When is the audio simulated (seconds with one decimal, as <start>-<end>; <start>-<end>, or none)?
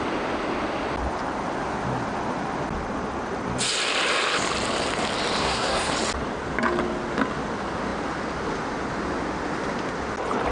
5.4-5.9